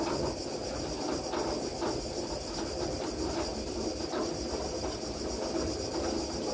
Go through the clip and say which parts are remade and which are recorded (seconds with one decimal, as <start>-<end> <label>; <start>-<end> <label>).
0.0-6.5 recorded